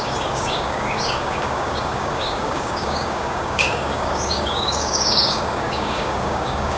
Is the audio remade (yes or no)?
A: yes